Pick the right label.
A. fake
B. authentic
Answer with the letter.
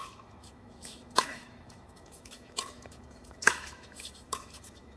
A